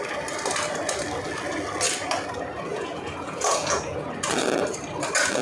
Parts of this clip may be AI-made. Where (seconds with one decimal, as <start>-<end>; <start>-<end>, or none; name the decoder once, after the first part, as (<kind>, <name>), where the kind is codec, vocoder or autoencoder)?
2.7-4.1 (vocoder, Vocos)